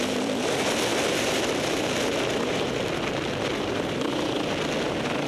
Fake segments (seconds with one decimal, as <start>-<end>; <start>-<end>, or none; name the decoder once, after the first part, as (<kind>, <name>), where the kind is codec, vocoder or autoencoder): none

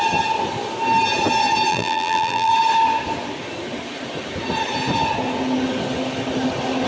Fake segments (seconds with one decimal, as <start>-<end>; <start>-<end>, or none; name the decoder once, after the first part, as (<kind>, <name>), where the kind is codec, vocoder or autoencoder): 1.7-2.5 (vocoder, BigVGAN v2)

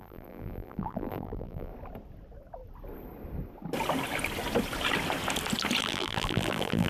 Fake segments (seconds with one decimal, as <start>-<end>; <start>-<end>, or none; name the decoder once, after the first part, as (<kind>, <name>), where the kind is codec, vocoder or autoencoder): 0.0-1.7 (vocoder, BigVGAN v2); 5.8-6.9

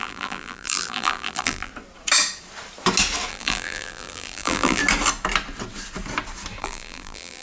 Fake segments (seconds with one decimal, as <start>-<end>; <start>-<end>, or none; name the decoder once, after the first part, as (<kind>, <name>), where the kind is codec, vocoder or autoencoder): 0.0-1.7 (vocoder, BigVGAN v2); 3.3-4.8; 6.6-7.4

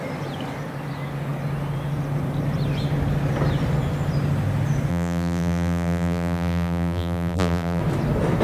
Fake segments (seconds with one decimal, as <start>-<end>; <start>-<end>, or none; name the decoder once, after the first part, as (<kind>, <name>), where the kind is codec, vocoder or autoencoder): 4.9-7.8 (vocoder, BigVGAN v2)